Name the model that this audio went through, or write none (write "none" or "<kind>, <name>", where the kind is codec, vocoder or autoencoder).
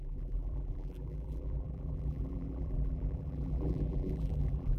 vocoder, BigVGAN v2